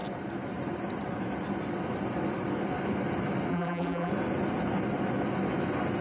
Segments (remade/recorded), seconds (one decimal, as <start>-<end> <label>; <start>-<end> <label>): 0.0-3.5 recorded; 3.5-4.1 remade; 4.1-6.0 recorded